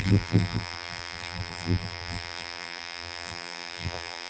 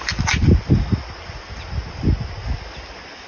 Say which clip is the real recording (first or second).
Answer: second